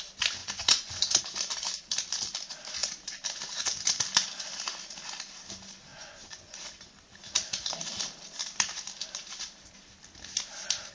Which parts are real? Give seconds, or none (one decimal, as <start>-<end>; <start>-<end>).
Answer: 0.0-0.4; 1.2-5.9; 6.6-10.9